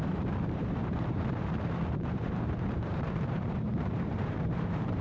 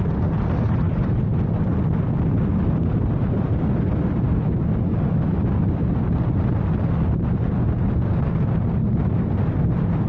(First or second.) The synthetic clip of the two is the first